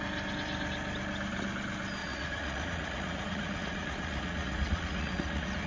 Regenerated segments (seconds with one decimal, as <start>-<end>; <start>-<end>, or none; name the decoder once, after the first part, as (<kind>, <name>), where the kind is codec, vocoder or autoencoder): 2.0-5.7 (vocoder, Vocos)